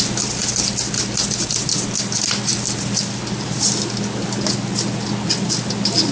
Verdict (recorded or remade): recorded